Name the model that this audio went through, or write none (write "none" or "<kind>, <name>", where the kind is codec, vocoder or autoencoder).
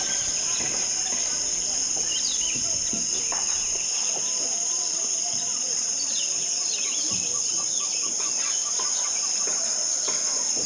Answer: none